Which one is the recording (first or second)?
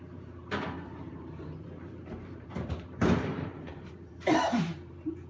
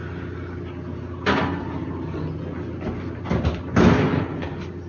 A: second